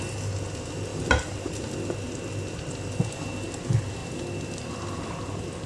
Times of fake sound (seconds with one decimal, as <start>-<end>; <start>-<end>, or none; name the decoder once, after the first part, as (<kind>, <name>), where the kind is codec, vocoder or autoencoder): 0.9-2.2 (vocoder, BigVGAN v2); 4.0-5.1